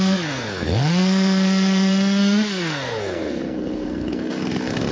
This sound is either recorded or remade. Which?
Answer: remade